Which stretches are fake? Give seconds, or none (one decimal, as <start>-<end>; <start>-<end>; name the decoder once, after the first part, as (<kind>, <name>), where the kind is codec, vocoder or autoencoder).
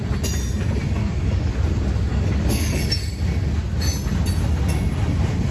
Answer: 1.0-1.5 (codec, DAC); 2.1-2.8